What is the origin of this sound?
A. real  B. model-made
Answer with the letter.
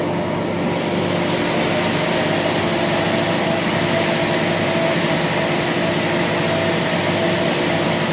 A